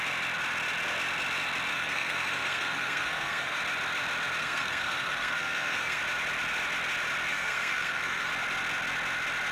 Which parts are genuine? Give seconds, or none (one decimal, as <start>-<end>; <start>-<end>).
0.0-1.7; 3.6-4.4; 6.0-7.3; 8.3-9.5